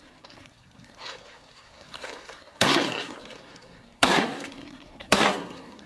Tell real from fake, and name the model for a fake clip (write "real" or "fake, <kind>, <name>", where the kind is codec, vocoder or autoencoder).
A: fake, codec, SNAC